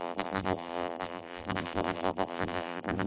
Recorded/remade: remade